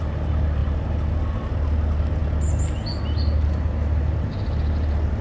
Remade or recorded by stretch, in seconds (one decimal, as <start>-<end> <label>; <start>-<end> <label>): 0.0-5.2 recorded